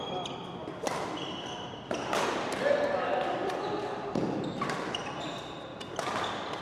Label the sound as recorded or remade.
recorded